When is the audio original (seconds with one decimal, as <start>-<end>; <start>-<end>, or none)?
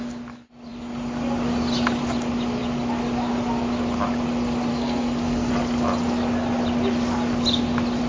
0.0-4.7; 5.5-8.1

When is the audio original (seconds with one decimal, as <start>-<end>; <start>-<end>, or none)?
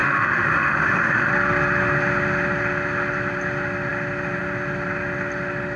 1.3-5.8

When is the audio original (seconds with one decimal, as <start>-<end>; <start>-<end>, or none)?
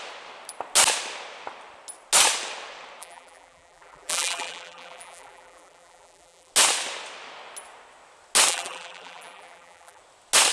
0.0-3.0; 6.5-8.5; 10.0-10.5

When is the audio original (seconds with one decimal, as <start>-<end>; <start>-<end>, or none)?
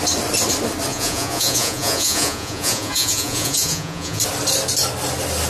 0.0-0.9; 4.2-5.5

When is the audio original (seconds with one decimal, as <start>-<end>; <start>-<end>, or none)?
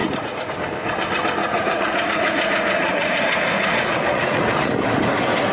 0.5-1.4; 4.7-5.5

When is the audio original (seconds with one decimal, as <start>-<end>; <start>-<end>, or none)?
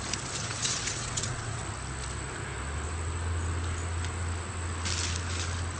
0.0-0.4; 1.6-5.8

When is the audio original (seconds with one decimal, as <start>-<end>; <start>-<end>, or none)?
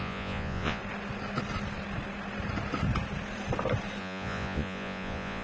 0.8-4.0